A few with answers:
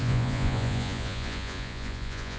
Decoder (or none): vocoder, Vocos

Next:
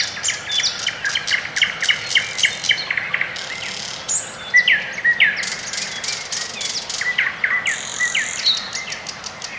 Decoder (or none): none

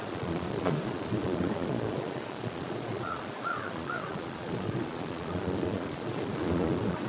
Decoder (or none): vocoder, Vocos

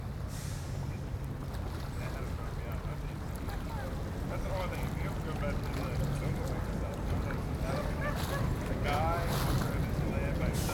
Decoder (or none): none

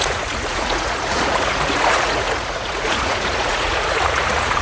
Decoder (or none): vocoder, Vocos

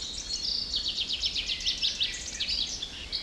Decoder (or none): none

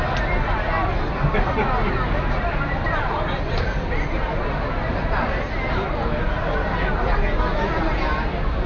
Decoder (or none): none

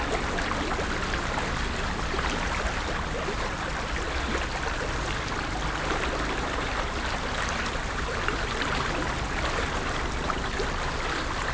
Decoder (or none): none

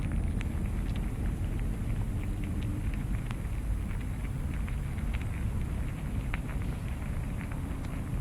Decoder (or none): none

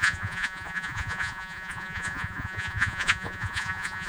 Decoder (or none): vocoder, Vocos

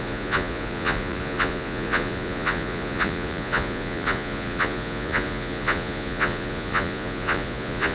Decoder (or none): vocoder, Vocos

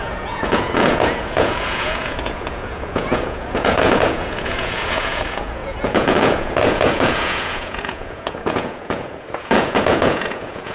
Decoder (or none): vocoder, Vocos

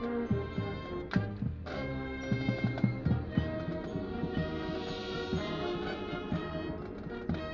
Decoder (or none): none